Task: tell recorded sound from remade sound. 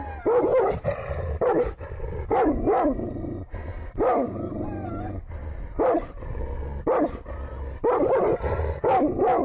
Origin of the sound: recorded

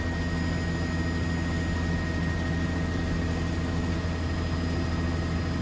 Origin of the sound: recorded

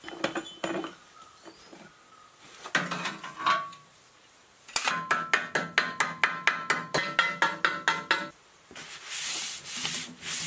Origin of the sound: recorded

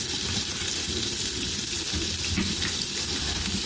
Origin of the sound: recorded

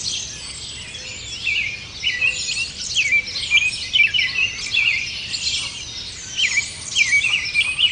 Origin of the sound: recorded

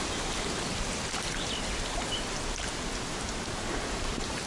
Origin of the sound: recorded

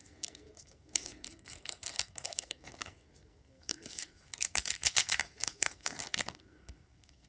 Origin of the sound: remade